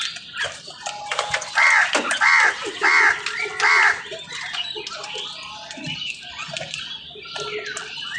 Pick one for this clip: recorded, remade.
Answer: recorded